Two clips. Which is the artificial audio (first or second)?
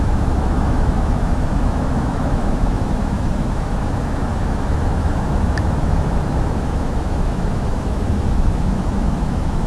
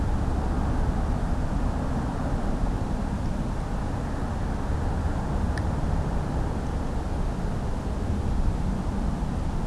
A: first